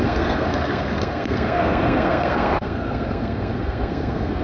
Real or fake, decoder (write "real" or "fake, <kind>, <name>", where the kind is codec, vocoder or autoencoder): fake, codec, SNAC